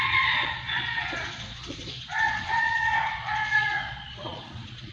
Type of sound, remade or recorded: remade